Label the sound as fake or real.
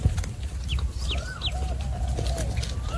real